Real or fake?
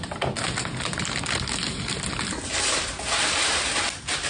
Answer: real